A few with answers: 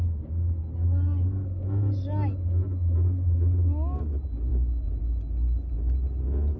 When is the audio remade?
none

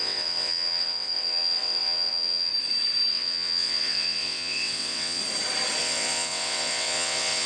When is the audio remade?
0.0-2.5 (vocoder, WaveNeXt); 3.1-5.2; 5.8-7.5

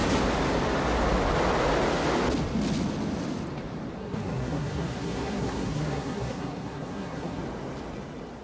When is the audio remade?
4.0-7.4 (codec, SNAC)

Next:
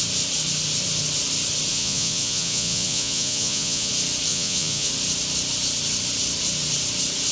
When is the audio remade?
1.7-3.9 (vocoder, Vocos); 4.3-4.9

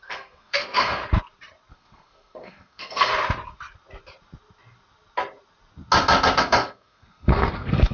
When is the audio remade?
0.0-1.0 (codec, SNAC); 1.7-3.1; 6.4-7.9

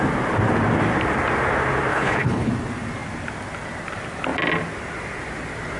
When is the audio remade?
1.9-2.5 (codec, HILCodec)

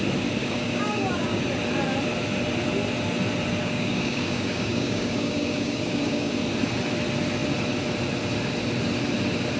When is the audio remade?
0.4-1.4 (codec, DAC); 3.6-6.3

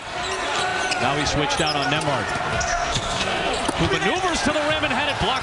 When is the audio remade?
2.5-3.5 (codec, SNAC)